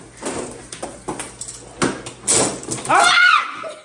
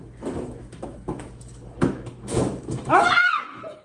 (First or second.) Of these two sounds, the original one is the first